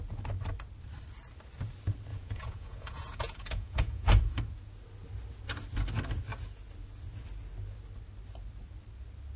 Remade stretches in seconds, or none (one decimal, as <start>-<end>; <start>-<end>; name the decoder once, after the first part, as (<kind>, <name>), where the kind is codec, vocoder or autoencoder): 2.1-4.1 (vocoder, Vocos)